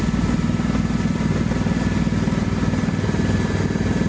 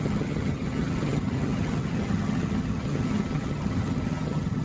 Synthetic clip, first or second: second